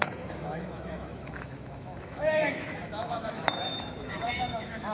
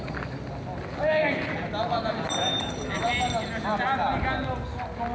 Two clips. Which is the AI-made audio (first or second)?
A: first